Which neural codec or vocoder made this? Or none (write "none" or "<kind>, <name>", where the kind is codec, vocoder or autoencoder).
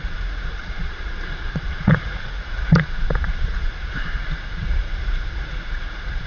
vocoder, Vocos